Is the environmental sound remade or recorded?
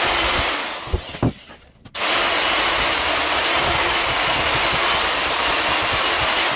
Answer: recorded